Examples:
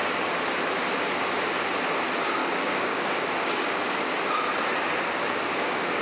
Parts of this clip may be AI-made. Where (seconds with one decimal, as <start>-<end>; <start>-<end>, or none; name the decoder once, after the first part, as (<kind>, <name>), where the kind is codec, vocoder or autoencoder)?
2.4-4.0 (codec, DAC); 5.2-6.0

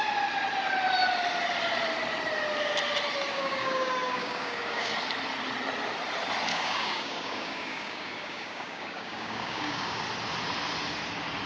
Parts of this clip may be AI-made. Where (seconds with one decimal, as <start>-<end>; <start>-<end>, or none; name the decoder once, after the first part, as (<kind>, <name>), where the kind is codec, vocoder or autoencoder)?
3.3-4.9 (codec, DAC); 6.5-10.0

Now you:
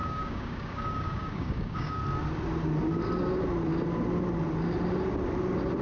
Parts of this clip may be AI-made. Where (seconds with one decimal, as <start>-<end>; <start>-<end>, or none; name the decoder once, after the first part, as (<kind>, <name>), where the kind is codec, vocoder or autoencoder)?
0.0-2.0 (codec, DAC)

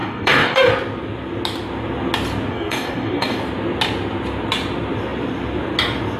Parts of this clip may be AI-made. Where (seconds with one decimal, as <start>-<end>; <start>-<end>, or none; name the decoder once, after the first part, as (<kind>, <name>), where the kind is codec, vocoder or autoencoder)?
0.0-0.7 (codec, DAC); 2.5-3.4

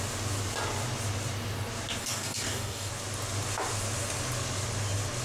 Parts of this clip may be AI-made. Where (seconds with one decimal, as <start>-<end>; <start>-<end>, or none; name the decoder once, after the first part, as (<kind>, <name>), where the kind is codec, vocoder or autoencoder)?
2.0-2.9 (codec, DAC)

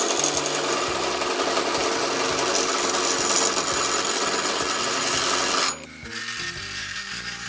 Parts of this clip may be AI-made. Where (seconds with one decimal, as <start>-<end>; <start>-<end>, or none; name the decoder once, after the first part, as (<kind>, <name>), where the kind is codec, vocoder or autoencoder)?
6.8-7.5 (codec, DAC)

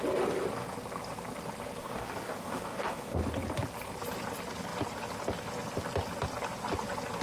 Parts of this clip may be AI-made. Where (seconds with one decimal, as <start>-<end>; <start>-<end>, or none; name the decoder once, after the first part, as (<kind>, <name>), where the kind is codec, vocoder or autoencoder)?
1.8-3.2 (codec, DAC)